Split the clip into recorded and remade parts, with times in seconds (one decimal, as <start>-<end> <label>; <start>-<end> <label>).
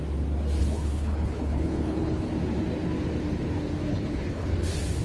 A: 0.0-0.6 recorded; 0.6-2.3 remade; 2.3-3.9 recorded; 3.9-4.5 remade; 4.5-5.0 recorded